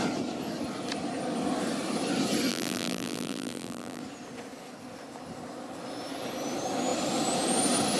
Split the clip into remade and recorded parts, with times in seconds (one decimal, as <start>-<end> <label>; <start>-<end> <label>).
0.0-2.5 recorded; 2.5-4.0 remade; 4.0-8.0 recorded